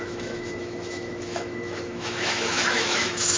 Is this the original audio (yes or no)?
no